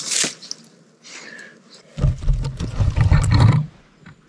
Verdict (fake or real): real